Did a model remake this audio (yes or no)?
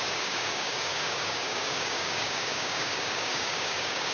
yes